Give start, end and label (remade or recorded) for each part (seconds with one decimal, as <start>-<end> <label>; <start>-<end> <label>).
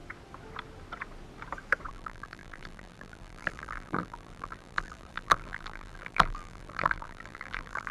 0.0-1.9 recorded; 1.9-7.9 remade